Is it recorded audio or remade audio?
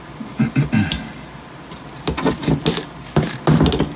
recorded